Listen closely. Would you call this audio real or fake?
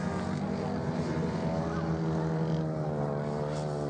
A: real